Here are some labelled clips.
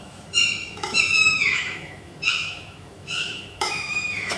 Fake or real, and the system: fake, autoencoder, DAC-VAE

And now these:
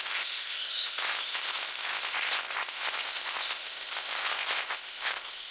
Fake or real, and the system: fake, codec, ZipCodec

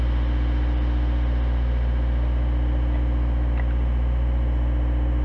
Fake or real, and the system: real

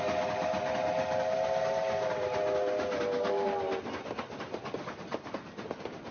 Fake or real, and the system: real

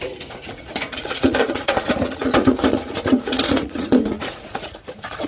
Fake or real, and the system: fake, vocoder, Vocos